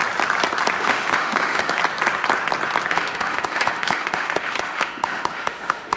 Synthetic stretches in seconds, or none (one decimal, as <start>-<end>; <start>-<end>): 0.8-1.8; 2.9-6.0